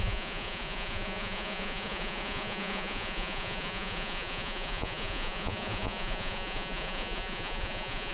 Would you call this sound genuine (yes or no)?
no